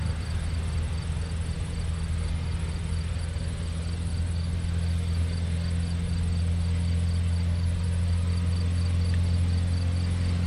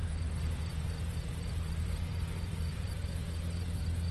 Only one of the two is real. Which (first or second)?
first